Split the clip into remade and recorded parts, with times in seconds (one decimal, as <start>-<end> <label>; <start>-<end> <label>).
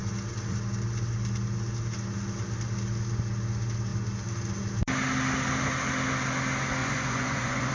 0.0-6.8 recorded; 6.8-7.7 remade